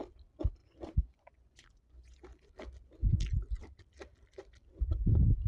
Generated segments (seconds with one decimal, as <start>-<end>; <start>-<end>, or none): 0.6-2.5